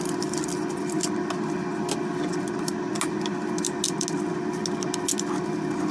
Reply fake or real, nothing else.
real